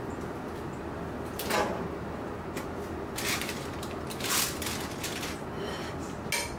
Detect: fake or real real